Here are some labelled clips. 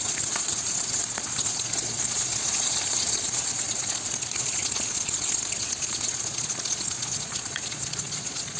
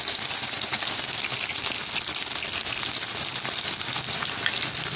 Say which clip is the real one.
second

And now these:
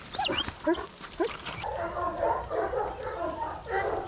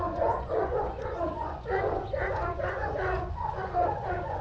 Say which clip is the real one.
first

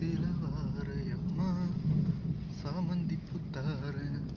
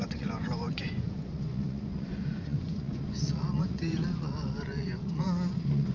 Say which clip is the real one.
first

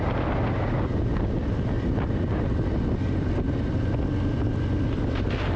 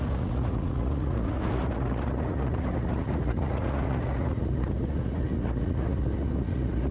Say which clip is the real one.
first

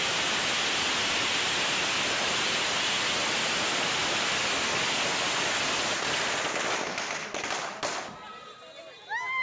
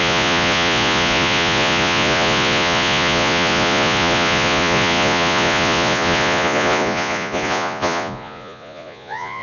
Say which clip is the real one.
first